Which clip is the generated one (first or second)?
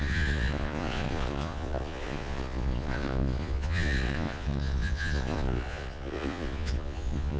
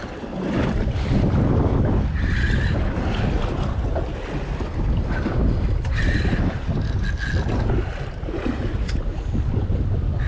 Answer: first